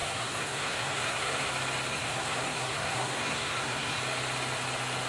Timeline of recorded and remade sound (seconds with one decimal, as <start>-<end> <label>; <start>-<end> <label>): 0.0-1.5 remade; 1.5-1.9 recorded; 1.9-4.0 remade; 4.0-5.1 recorded